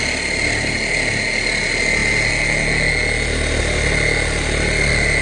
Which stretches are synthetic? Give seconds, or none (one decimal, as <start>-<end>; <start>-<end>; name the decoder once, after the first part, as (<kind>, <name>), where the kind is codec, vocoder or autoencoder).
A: none